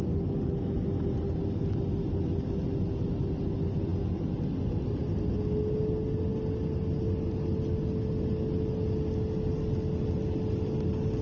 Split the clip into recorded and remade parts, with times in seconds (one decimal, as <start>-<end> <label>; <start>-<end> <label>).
0.0-11.2 recorded